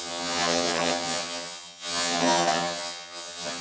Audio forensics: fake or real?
fake